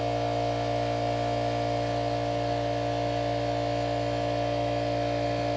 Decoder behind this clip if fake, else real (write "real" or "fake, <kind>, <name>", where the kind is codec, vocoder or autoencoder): real